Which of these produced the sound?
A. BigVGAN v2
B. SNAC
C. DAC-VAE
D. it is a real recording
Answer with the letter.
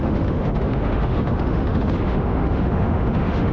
C